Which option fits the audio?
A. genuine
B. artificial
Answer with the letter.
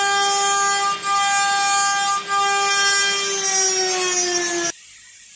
A